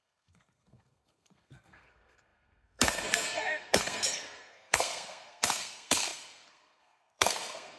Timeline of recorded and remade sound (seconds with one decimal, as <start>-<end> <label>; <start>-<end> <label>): 0.0-7.8 remade